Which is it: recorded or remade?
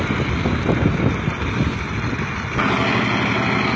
recorded